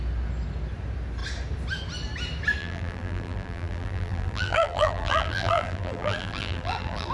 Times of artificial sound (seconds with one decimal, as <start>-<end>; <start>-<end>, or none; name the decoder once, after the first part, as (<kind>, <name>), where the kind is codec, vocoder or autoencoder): 2.6-7.1 (vocoder, BigVGAN v2)